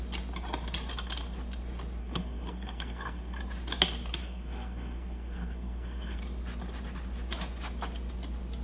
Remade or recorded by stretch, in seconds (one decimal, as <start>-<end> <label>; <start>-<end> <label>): 0.0-2.0 recorded; 2.0-3.4 remade; 3.4-4.2 recorded; 4.2-6.2 remade; 6.2-8.6 recorded